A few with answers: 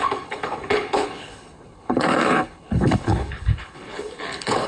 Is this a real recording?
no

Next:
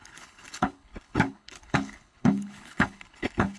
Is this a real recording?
no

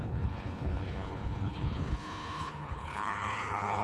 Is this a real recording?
no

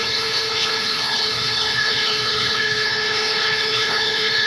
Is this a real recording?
no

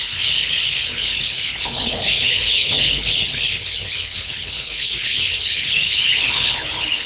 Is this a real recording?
no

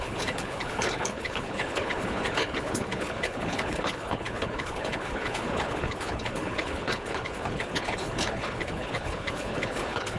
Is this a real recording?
no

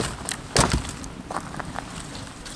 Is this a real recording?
yes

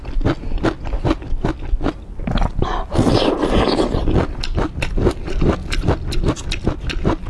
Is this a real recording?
yes